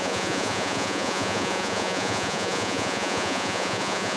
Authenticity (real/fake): fake